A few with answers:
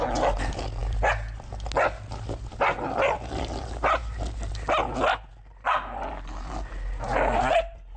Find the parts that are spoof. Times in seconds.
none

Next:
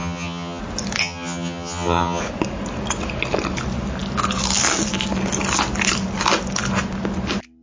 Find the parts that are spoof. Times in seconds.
0.0-0.6 (vocoder, HiFi-GAN); 1.0-2.2

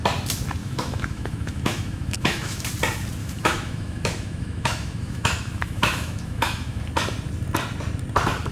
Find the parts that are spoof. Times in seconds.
0.6-2.6 (autoencoder, DAC-VAE); 3.2-6.8

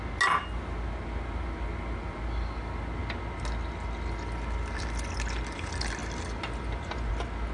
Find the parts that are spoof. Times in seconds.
none

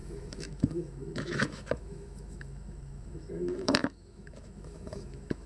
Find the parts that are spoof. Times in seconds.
0.0-5.5 (autoencoder, DAC-VAE)

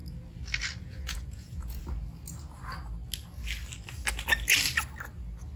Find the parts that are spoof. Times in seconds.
0.8-1.8 (vocoder, Vocos)

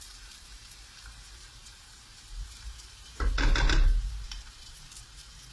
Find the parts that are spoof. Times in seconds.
0.0-5.5 (vocoder, BigVGAN v2)